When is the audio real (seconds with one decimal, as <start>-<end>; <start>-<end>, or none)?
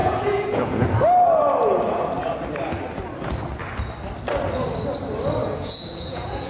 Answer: 0.9-5.4